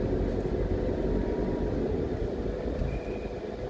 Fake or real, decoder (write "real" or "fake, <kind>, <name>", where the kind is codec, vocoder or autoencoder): real